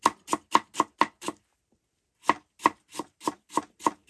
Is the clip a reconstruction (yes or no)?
no